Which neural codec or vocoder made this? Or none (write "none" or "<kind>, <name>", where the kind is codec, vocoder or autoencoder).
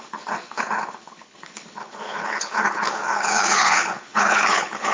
codec, HILCodec